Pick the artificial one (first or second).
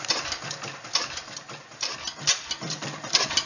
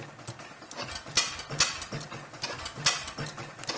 first